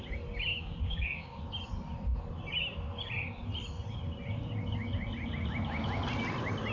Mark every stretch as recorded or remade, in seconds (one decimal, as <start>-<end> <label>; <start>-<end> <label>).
0.0-0.5 recorded; 0.5-1.4 remade; 1.4-6.7 recorded